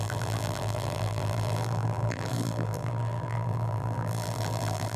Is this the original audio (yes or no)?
no